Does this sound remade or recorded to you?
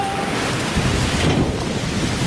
recorded